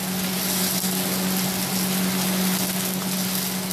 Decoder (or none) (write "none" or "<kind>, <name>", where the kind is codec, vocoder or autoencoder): none